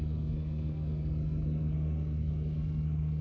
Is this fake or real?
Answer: fake